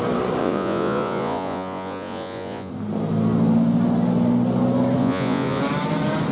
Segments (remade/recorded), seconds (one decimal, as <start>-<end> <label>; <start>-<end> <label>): 0.0-0.4 recorded; 0.4-2.7 remade; 2.7-5.0 recorded; 5.0-5.6 remade; 5.6-6.3 recorded

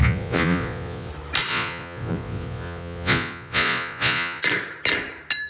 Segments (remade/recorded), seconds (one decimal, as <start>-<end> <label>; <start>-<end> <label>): 0.0-1.1 remade; 1.1-1.5 recorded; 1.5-4.4 remade; 4.4-5.5 recorded

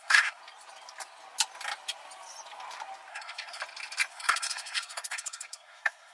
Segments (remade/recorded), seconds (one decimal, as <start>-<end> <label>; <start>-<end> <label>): 0.0-0.4 remade; 0.4-3.1 recorded; 3.1-3.6 remade; 3.6-4.1 recorded; 4.1-6.1 remade

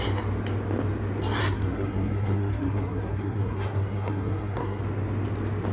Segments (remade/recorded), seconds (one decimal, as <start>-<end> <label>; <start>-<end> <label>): 0.0-1.4 recorded; 1.4-4.8 remade; 4.8-5.7 recorded